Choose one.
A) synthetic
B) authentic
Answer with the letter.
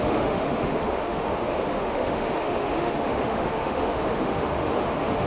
A